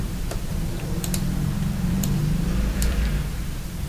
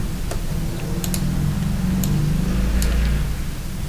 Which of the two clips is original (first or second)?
second